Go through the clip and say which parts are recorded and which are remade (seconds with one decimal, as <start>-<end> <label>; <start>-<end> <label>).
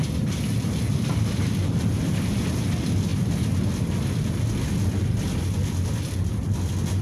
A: 0.0-1.6 remade; 1.6-7.0 recorded